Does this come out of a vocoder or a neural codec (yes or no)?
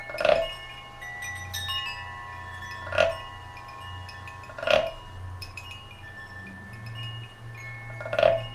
no